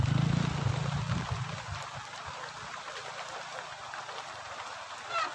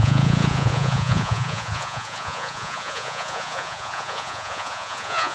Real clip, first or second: first